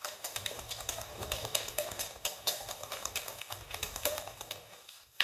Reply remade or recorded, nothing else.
remade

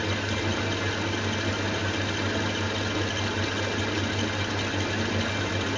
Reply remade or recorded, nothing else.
recorded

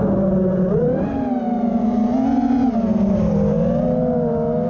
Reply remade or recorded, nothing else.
recorded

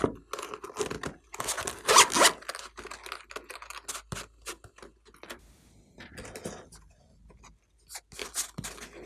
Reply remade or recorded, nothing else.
recorded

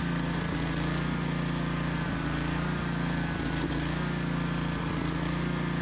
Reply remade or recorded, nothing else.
recorded